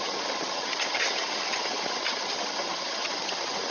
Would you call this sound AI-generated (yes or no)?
yes